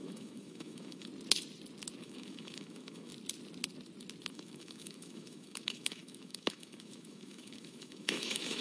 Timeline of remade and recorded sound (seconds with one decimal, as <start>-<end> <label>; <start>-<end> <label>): 0.0-1.1 remade; 1.1-2.0 recorded; 2.0-3.1 remade; 3.1-4.3 recorded; 4.3-8.6 remade